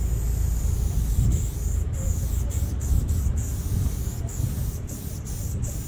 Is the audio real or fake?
real